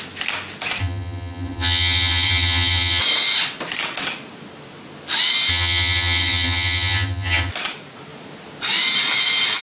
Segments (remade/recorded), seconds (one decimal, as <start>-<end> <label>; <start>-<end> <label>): 0.0-0.8 recorded; 0.8-3.0 remade; 3.0-5.5 recorded; 5.5-7.5 remade; 7.5-9.6 recorded